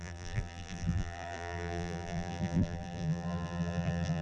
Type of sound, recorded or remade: remade